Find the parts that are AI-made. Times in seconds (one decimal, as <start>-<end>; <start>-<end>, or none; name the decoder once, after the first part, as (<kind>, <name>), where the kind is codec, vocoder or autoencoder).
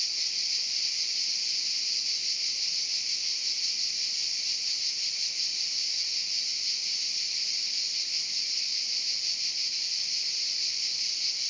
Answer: none